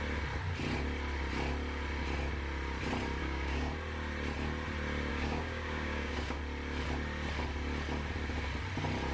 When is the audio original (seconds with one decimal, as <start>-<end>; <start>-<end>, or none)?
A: 0.0-3.2; 3.7-5.1; 6.4-9.1